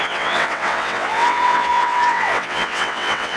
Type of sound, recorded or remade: remade